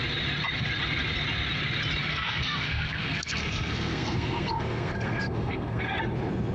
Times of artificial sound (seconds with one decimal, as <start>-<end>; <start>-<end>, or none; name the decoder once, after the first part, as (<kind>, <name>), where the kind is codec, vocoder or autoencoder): 2.1-6.0 (codec, SNAC)